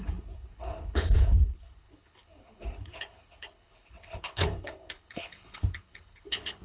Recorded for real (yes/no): no